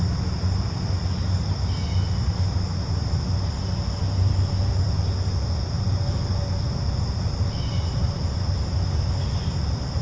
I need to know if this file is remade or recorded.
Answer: recorded